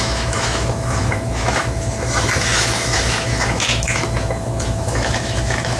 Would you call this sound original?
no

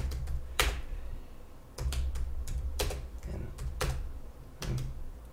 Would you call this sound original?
no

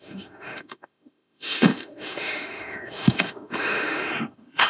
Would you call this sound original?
no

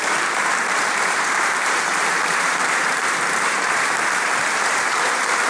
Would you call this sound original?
no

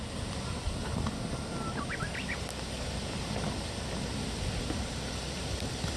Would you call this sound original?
yes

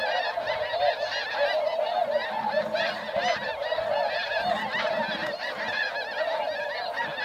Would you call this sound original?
yes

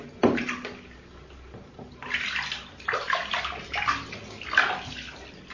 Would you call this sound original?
yes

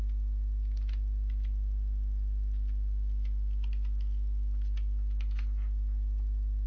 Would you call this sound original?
yes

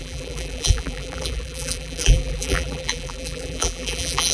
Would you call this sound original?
no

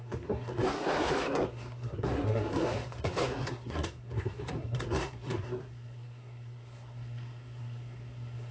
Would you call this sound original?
no